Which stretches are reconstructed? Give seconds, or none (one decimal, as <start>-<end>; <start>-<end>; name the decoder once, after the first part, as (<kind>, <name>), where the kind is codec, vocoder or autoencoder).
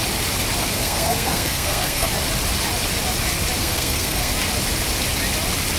0.6-2.1 (codec, SNAC); 3.6-4.3